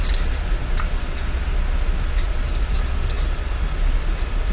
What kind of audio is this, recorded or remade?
remade